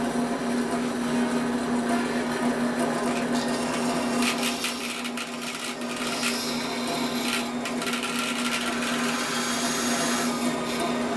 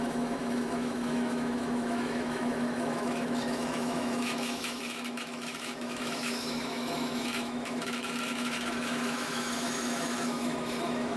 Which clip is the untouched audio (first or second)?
first